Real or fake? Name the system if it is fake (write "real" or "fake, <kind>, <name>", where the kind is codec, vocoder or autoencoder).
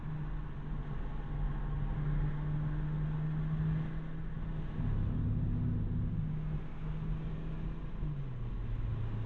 real